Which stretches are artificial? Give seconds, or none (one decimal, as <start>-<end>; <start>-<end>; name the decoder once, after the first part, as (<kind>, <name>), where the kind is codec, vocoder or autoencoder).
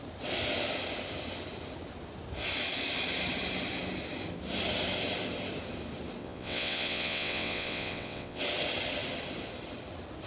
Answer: 6.2-8.4 (vocoder, WaveNeXt)